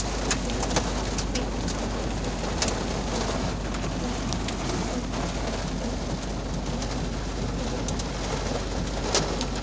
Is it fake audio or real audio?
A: real